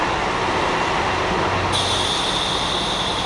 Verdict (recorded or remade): recorded